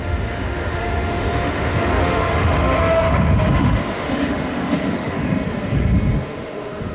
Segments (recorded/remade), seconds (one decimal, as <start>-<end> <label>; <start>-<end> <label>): 0.0-6.9 remade